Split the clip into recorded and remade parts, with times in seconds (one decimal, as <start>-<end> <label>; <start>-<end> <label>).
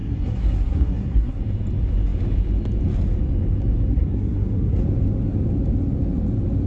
0.0-1.4 remade; 1.4-3.9 recorded; 3.9-4.8 remade; 4.8-6.7 recorded